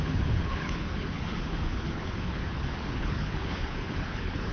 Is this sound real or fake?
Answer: fake